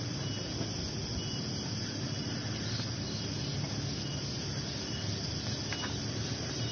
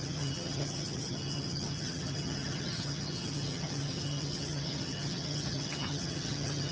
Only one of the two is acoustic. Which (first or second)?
first